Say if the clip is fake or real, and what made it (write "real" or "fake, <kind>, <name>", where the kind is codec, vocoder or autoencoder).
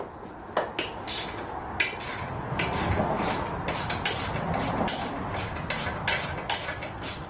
real